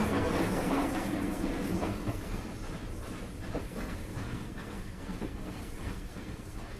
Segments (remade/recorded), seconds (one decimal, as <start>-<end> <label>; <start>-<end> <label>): 0.0-2.5 remade; 2.5-3.6 recorded; 3.6-6.8 remade